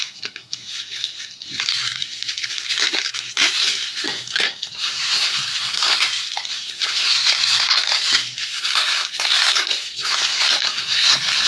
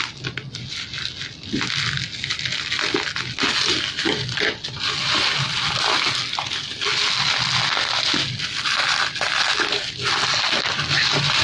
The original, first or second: second